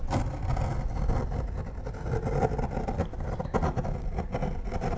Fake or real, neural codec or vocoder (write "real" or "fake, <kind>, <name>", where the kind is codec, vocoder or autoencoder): real